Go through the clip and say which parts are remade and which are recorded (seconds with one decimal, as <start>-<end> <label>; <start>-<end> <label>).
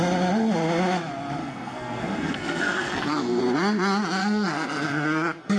0.0-1.4 recorded; 1.4-3.4 remade; 3.4-4.2 recorded; 4.2-5.6 remade